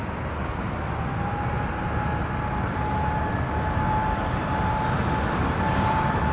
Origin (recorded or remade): recorded